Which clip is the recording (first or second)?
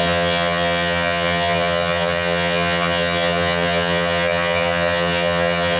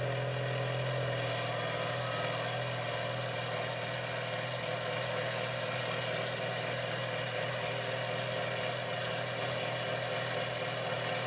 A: second